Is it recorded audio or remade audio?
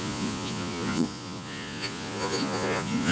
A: remade